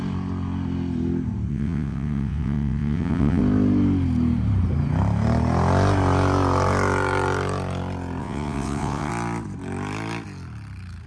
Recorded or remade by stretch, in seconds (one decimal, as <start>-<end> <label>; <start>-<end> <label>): 0.0-1.5 recorded; 1.5-3.4 remade; 3.4-8.2 recorded; 8.2-9.1 remade; 9.1-11.1 recorded